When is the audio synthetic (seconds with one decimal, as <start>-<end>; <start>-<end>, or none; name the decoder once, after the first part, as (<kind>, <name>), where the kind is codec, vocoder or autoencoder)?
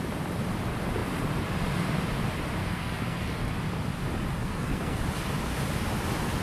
2.6-3.5 (codec, SNAC); 4.4-5.0